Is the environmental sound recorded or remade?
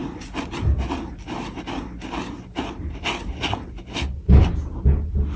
recorded